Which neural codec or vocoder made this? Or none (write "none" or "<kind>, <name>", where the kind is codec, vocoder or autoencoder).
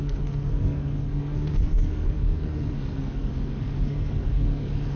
codec, SNAC